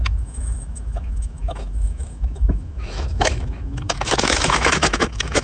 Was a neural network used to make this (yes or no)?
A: yes